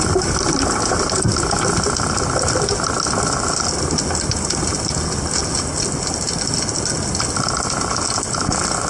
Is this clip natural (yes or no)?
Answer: yes